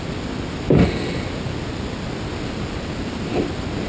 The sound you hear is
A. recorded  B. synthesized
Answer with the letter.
A